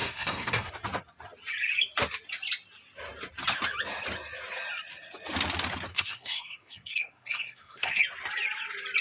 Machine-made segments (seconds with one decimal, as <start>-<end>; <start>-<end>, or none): 0.0-0.7; 5.9-8.0